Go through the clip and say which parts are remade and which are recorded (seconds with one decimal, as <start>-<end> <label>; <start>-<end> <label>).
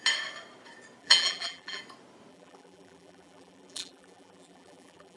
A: 0.0-1.0 recorded; 1.0-1.8 remade; 1.8-2.3 recorded; 2.3-5.2 remade